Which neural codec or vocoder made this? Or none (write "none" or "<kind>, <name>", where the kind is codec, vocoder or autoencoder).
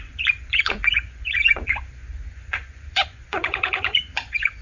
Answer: vocoder, Vocos